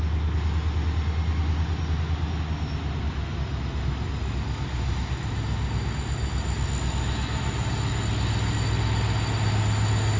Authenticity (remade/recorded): recorded